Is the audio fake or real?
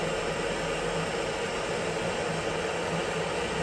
real